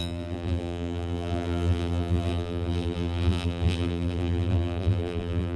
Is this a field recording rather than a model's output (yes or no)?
no